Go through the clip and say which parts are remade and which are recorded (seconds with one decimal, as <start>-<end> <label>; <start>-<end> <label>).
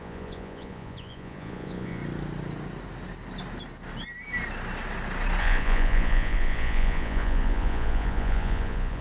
0.0-2.0 remade; 2.0-5.4 recorded; 5.4-9.0 remade